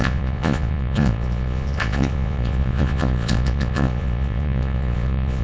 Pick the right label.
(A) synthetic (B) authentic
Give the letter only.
A